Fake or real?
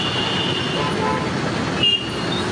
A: real